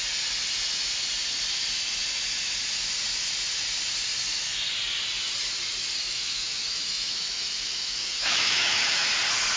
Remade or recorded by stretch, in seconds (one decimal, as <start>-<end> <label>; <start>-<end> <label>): 0.0-6.1 recorded; 6.1-9.1 remade; 9.1-9.6 recorded